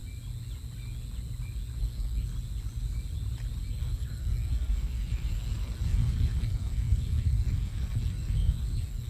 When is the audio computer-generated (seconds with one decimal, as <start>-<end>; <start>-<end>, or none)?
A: 1.8-2.3; 3.7-9.1